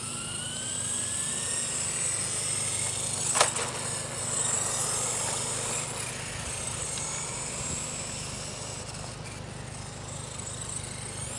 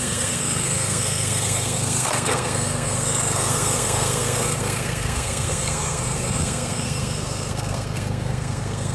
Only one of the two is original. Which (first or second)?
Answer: first